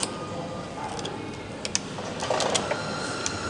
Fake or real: real